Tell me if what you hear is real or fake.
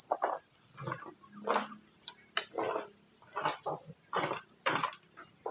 real